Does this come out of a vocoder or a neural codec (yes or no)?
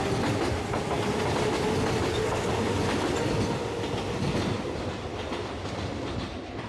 no